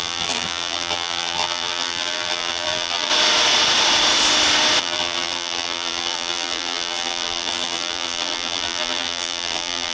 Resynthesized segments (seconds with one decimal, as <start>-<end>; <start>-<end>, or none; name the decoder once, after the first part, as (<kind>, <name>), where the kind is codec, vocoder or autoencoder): 0.0-3.1 (vocoder, BigVGAN v2); 4.8-9.9